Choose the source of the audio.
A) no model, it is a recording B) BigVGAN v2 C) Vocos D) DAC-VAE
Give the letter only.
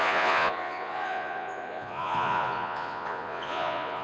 C